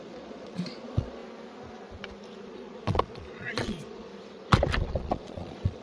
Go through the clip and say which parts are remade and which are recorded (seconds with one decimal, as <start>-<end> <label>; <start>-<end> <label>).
0.0-1.2 remade; 1.2-2.5 recorded; 2.5-4.1 remade; 4.1-4.8 recorded; 4.8-5.8 remade